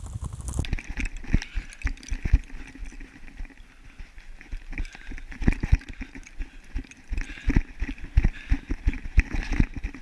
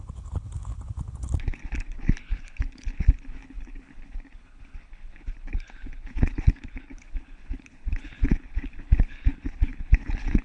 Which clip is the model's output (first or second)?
second